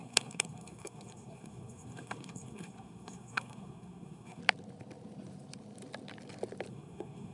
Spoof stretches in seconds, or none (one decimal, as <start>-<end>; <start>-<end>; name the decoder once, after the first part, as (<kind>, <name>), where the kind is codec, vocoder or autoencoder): 0.0-4.4 (codec, SNAC); 6.7-7.3